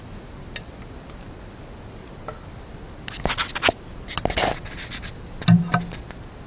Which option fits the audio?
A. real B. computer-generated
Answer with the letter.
A